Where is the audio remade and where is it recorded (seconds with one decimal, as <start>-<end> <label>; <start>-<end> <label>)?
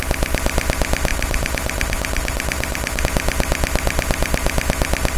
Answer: 0.0-1.1 recorded; 1.1-3.0 remade; 3.0-5.2 recorded